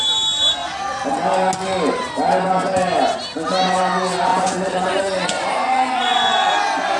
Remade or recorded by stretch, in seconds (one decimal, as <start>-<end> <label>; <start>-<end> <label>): 0.0-4.3 recorded; 4.3-6.5 remade; 6.5-7.0 recorded